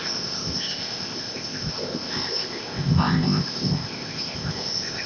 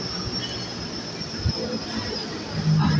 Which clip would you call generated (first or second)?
first